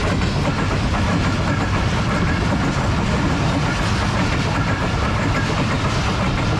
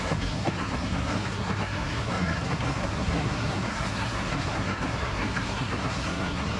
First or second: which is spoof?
second